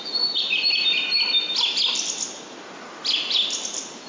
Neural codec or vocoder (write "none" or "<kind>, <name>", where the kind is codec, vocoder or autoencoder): none